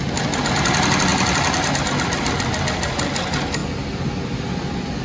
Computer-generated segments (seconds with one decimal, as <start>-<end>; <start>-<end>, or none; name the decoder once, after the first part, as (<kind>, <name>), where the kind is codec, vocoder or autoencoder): none